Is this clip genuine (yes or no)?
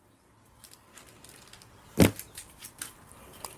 yes